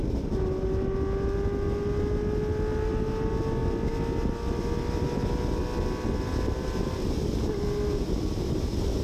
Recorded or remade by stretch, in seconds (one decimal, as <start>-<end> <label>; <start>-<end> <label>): 0.0-9.0 recorded